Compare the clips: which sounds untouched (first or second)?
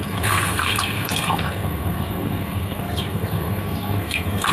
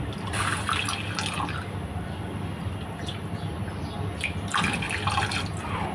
second